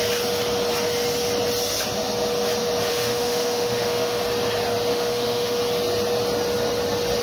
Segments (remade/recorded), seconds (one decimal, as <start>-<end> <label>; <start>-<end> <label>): 0.0-2.9 recorded; 2.9-4.2 remade; 4.2-4.9 recorded; 4.9-5.6 remade; 5.6-7.2 recorded